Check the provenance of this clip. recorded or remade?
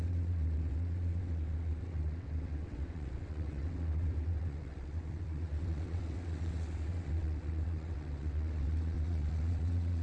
remade